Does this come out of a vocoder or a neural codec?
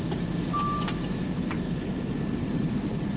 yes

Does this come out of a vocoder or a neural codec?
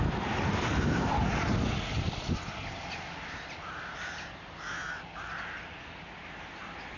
no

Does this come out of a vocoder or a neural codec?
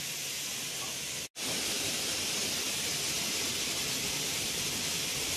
no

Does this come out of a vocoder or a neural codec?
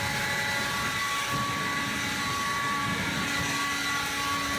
no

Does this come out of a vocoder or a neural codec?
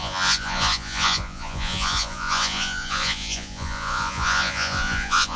yes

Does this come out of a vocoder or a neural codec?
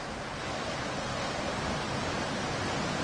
no